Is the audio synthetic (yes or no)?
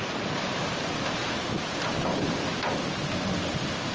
no